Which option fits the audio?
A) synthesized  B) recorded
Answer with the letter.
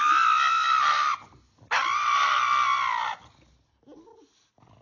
B